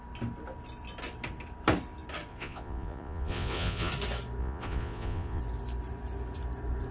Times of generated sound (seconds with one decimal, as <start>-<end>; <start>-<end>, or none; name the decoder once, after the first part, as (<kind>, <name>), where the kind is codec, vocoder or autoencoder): 2.3-3.9 (vocoder, Vocos); 4.4-5.4